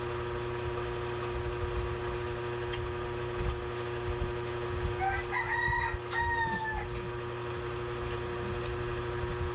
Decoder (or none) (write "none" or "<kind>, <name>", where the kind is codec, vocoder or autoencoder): none